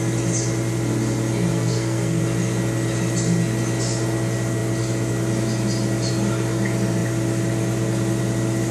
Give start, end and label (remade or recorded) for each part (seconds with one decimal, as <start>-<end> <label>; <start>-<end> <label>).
0.0-1.5 recorded; 1.5-2.2 remade; 2.2-8.7 recorded